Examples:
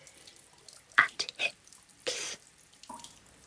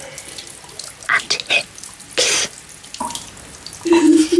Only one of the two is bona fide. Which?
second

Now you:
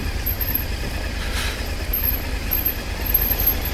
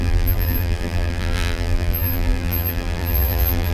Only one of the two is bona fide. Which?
first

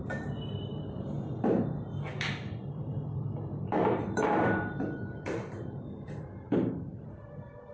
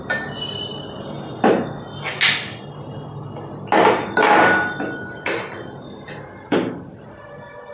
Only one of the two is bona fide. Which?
second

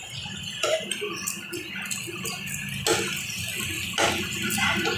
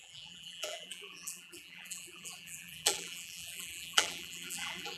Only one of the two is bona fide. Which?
first